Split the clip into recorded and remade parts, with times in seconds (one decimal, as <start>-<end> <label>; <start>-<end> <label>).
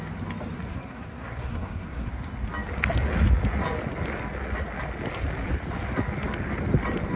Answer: 0.0-0.7 recorded; 0.7-2.1 remade; 2.1-7.2 recorded